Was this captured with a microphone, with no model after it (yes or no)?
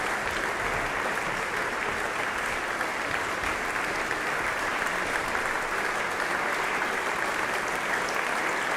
yes